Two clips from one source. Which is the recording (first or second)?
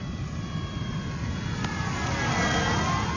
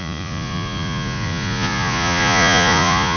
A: first